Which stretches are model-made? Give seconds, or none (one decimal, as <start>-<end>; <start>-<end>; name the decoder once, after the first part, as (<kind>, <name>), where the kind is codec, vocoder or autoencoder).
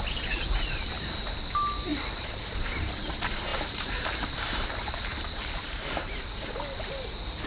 0.0-7.5 (vocoder, BigVGAN v2)